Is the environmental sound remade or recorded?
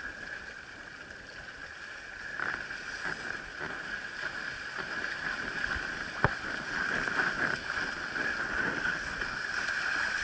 recorded